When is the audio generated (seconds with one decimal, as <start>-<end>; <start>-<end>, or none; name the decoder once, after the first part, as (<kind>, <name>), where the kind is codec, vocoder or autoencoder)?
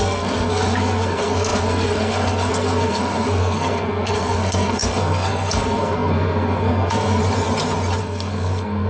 0.0-7.2 (codec, SNAC); 8.0-8.9